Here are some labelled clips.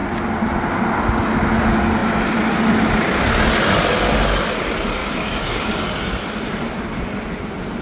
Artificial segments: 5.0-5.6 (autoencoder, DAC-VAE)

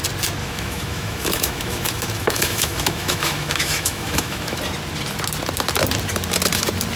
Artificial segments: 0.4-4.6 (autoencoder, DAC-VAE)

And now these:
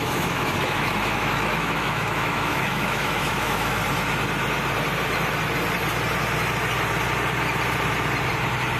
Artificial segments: 0.0-3.8 (autoencoder, DAC-VAE)